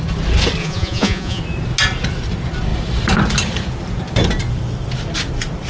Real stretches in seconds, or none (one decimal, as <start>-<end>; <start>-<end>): 0.0-0.6; 1.4-5.7